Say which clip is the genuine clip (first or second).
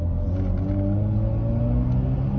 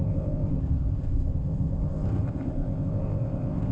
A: first